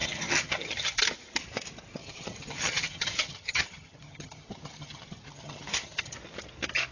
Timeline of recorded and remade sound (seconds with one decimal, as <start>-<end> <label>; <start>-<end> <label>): 0.0-1.0 remade; 1.0-2.0 recorded; 2.0-6.1 remade; 6.1-6.9 recorded